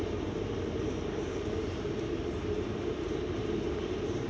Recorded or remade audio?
remade